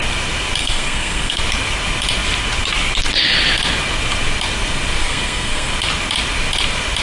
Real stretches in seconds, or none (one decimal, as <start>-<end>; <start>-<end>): 0.0-0.6; 1.4-5.0; 5.7-7.0